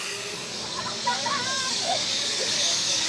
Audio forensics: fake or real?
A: fake